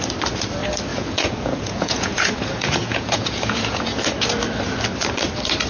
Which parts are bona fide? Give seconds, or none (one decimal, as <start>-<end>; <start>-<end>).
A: 0.0-0.9; 4.0-5.7